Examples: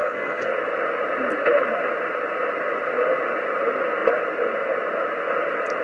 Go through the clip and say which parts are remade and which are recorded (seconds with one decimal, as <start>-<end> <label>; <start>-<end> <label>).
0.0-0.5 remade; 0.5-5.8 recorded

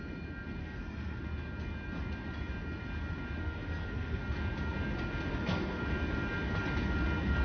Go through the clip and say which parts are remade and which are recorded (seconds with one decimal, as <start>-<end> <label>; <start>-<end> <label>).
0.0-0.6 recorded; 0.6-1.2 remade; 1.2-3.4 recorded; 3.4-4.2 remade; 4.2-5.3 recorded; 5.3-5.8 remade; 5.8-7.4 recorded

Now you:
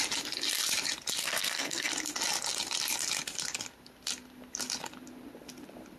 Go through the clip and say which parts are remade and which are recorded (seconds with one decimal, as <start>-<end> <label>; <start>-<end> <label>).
0.0-1.2 recorded; 1.2-1.9 remade; 1.9-6.0 recorded

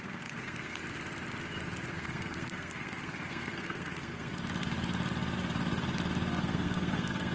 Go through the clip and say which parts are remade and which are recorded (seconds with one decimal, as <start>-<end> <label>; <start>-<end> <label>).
0.0-0.8 remade; 0.8-1.9 recorded; 1.9-4.3 remade; 4.3-6.4 recorded; 6.4-7.3 remade

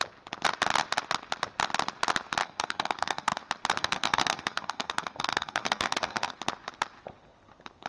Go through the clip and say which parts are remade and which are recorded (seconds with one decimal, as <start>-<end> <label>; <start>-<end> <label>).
0.0-2.4 recorded; 2.4-3.4 remade; 3.4-3.8 recorded; 3.8-6.3 remade; 6.3-7.9 recorded